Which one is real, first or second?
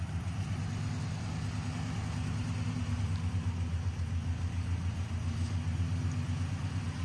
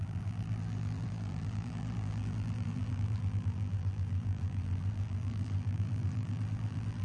first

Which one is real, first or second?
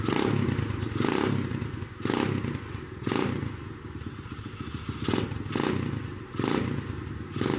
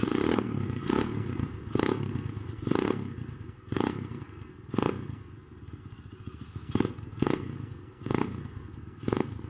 first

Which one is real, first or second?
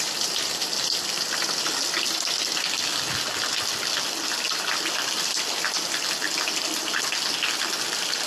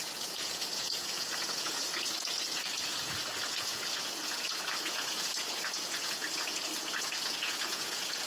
first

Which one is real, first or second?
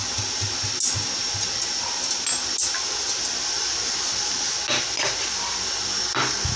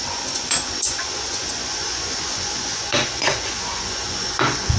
first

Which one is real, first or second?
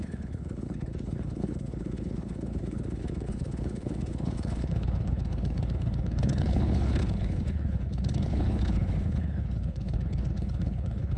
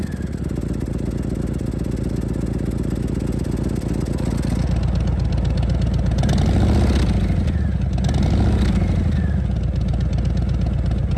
second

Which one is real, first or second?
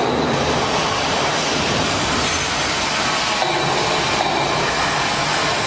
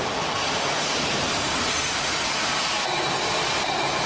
first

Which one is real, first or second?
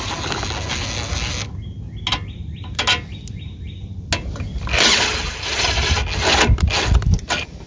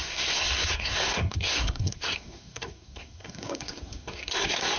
first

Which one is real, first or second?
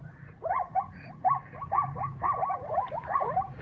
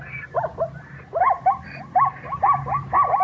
second